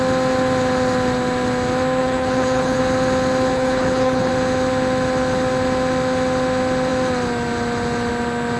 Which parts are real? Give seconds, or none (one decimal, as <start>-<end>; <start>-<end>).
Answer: 0.0-2.0; 2.8-3.5; 4.3-8.6